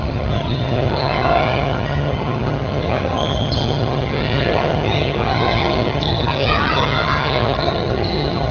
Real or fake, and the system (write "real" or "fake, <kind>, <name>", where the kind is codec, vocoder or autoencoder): fake, vocoder, HiFi-GAN